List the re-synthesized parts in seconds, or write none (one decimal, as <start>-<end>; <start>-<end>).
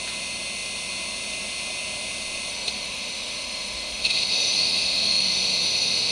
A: 2.5-6.1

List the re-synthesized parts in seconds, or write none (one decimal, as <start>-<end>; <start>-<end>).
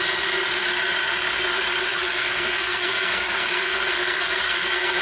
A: 1.9-5.0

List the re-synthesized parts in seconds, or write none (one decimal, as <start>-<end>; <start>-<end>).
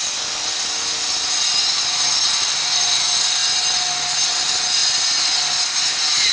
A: none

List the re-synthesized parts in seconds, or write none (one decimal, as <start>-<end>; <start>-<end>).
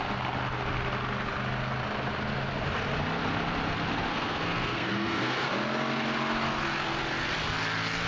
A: 4.1-5.5